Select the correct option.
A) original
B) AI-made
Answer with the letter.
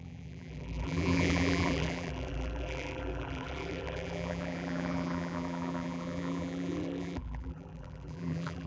B